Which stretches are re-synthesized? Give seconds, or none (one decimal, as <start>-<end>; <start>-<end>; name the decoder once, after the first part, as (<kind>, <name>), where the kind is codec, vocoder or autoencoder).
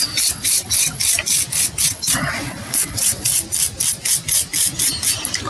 0.0-1.0 (vocoder, WaveNeXt); 1.8-3.3